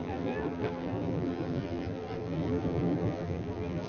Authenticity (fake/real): fake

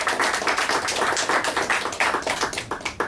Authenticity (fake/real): real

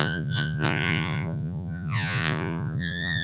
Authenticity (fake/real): fake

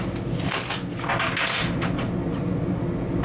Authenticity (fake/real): real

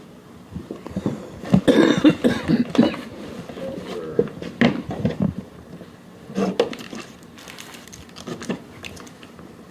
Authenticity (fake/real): real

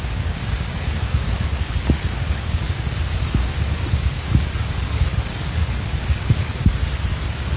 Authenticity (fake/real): fake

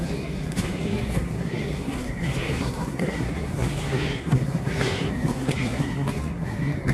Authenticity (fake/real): fake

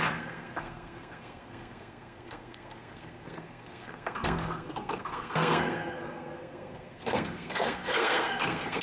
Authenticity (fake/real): fake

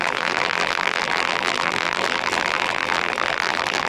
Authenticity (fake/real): fake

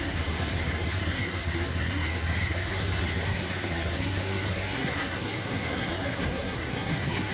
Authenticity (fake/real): fake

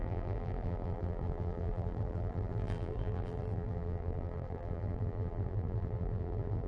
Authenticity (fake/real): fake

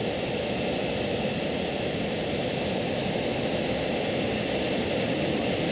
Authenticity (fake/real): real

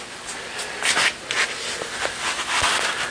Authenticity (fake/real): real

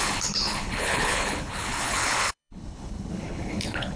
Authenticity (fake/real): fake